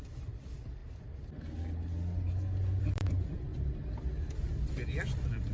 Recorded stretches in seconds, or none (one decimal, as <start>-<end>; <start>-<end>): 0.8-2.8; 3.5-4.7